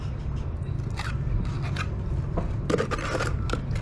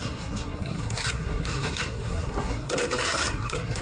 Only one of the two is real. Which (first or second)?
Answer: first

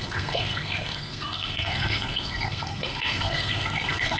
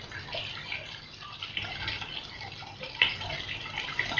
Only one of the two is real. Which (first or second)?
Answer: second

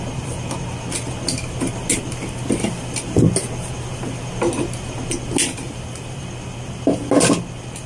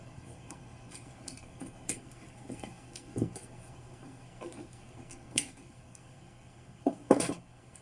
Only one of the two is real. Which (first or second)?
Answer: first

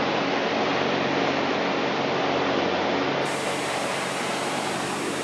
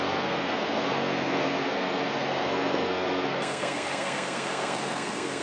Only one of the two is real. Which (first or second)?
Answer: first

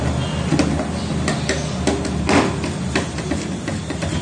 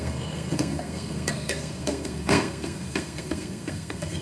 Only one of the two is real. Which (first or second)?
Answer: first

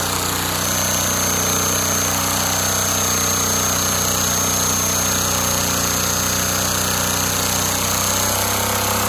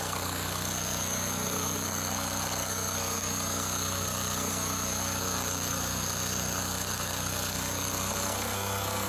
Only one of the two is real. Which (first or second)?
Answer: first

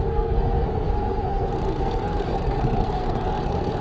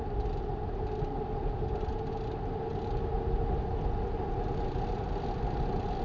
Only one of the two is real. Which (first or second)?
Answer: second